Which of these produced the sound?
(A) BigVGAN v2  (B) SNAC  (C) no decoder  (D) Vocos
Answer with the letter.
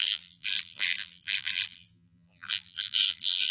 A